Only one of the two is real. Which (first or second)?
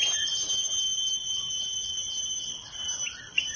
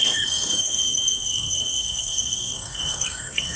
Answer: first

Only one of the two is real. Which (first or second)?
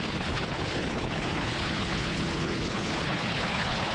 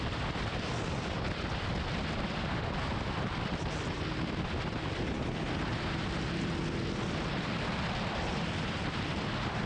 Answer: second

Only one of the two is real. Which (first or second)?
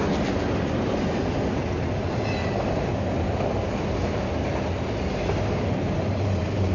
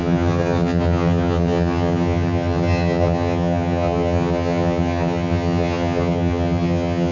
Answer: first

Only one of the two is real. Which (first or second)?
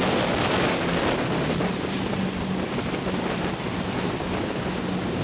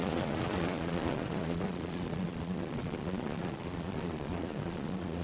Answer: first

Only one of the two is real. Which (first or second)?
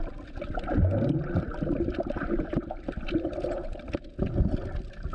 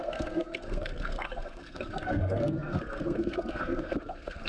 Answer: first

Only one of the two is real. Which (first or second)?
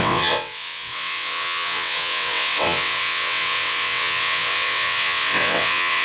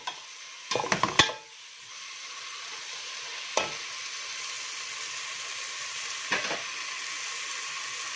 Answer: second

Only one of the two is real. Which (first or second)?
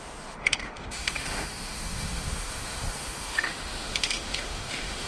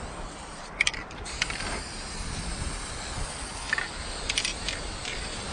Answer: second